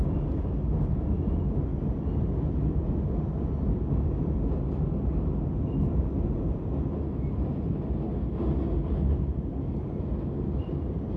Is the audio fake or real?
real